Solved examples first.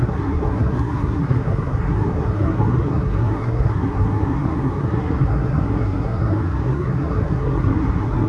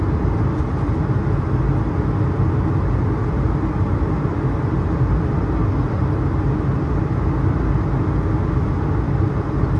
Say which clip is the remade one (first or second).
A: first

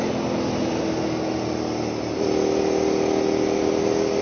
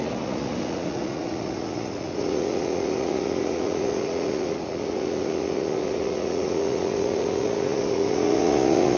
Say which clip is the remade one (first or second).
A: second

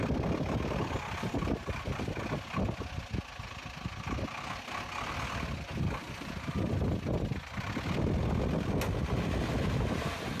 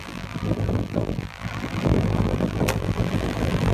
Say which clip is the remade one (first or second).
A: second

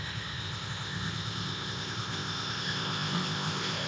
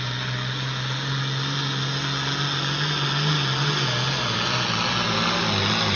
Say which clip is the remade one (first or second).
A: first